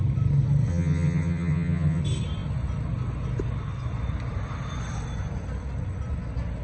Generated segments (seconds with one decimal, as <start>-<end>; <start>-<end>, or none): 0.7-2.0